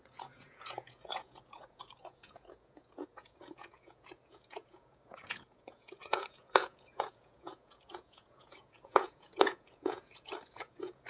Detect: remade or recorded remade